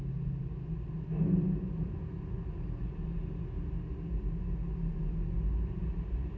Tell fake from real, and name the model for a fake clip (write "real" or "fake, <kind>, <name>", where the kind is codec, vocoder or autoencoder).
real